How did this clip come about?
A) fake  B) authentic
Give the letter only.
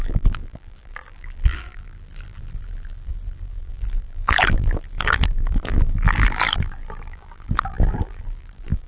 A